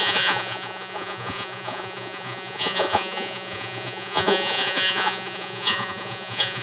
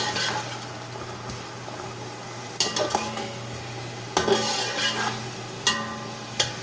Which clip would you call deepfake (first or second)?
first